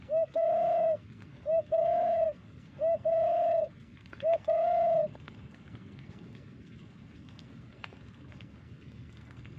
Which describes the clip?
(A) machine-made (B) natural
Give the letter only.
A